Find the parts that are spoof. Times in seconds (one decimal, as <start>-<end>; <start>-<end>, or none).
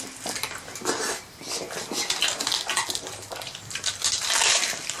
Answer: none